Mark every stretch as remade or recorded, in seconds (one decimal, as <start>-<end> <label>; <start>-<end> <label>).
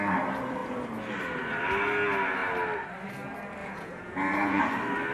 0.0-3.6 recorded; 3.6-4.6 remade; 4.6-5.1 recorded